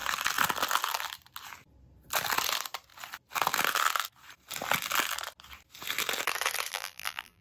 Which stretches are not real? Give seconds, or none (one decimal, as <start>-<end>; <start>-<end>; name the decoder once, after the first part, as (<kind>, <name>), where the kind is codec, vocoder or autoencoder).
6.7-7.4 (vocoder, BigVGAN v2)